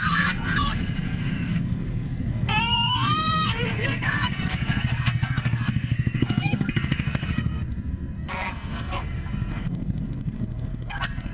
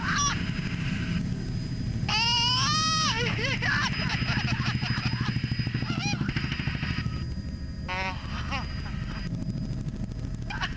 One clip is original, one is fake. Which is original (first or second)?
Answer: second